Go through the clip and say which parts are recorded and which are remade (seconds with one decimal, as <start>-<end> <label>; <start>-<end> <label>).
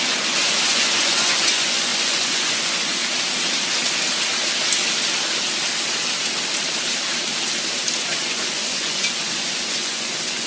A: 0.0-3.0 remade; 3.0-8.0 recorded; 8.0-10.5 remade